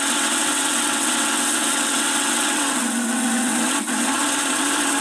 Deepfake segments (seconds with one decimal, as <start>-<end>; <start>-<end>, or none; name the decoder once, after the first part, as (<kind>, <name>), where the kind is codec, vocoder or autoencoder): 0.0-5.0 (vocoder, WaveNeXt)